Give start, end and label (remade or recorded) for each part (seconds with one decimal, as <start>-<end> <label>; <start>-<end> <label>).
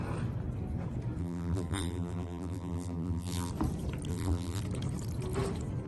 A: 0.0-1.2 recorded; 1.2-3.5 remade; 3.5-4.1 recorded; 4.1-4.6 remade; 4.6-5.9 recorded